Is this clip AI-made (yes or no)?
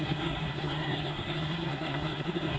yes